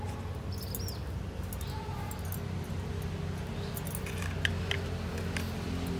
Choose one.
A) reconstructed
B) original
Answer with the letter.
B